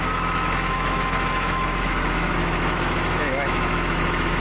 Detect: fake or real fake